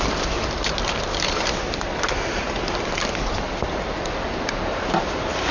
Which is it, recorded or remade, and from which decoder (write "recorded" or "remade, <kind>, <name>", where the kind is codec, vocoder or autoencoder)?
recorded